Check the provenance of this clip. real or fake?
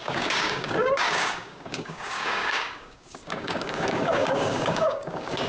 fake